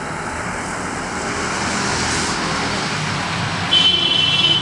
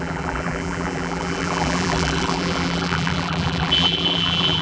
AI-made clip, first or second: second